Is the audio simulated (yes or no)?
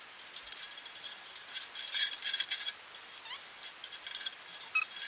no